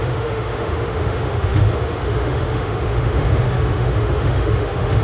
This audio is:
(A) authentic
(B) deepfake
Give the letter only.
B